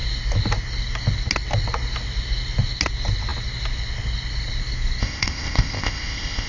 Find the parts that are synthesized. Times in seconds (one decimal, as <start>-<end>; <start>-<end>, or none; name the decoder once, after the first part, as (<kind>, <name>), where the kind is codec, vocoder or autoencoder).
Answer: 5.0-6.5 (codec, ZipCodec)